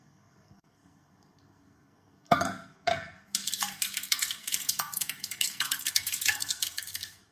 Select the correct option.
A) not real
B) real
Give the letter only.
A